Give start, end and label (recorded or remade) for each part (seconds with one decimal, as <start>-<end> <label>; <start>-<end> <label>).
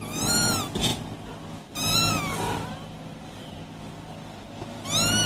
0.0-5.3 recorded